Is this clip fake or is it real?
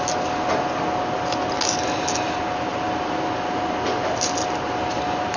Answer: real